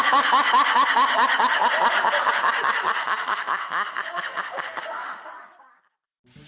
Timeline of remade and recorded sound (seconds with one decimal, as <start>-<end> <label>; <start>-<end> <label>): 0.0-3.0 recorded; 3.0-5.3 remade; 5.3-6.5 recorded